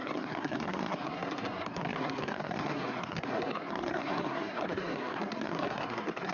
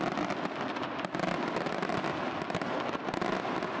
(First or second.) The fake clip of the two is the first